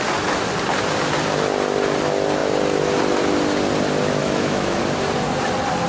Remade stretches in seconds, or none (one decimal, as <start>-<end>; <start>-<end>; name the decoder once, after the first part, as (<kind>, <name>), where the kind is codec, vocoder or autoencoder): 4.2-4.8 (autoencoder, DAC-VAE)